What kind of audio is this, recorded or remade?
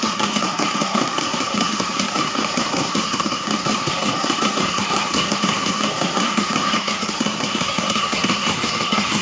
remade